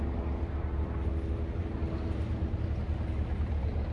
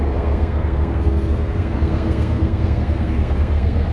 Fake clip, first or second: second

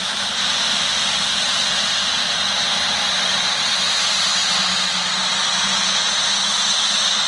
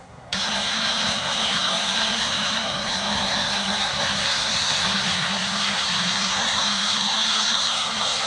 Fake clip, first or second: second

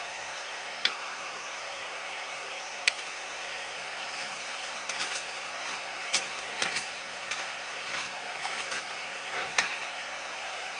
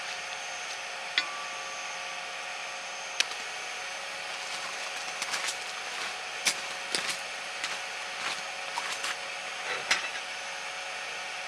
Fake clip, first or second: first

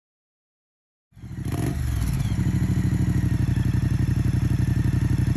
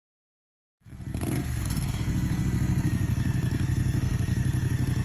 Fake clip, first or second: second